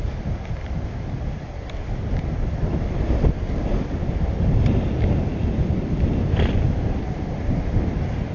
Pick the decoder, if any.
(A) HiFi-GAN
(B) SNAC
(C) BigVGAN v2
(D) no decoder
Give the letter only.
D